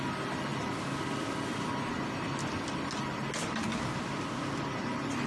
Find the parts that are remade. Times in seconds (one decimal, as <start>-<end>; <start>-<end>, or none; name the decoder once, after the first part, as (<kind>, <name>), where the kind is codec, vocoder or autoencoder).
none